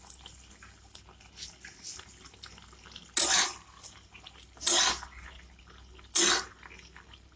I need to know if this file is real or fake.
real